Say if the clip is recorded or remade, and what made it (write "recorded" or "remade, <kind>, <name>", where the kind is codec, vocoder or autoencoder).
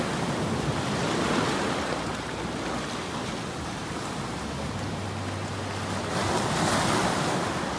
recorded